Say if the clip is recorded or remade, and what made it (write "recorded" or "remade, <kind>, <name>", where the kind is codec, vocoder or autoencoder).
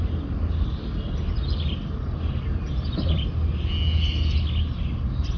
recorded